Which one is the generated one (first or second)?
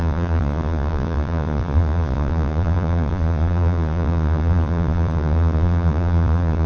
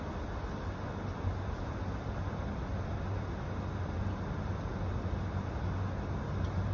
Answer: first